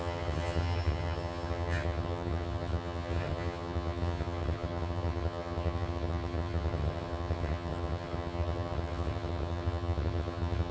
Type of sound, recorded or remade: remade